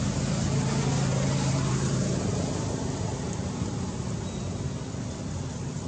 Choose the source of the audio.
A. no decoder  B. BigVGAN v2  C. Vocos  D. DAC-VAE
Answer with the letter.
A